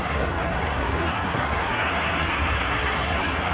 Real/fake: fake